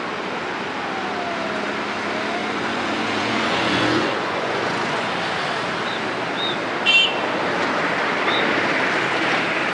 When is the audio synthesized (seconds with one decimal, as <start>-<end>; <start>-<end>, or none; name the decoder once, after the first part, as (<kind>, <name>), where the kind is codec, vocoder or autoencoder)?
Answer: 2.4-5.1 (vocoder, Vocos)